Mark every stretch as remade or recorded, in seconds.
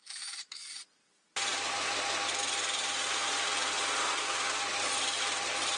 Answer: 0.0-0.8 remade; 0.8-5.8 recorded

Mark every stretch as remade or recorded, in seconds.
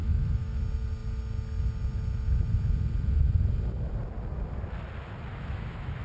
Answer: 0.0-0.6 remade; 0.6-5.3 recorded; 5.3-6.0 remade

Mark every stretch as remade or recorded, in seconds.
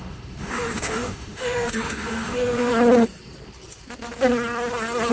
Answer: 0.0-2.7 remade; 2.7-5.1 recorded